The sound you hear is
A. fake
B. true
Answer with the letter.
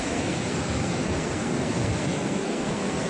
A